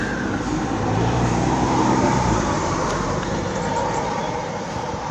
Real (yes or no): no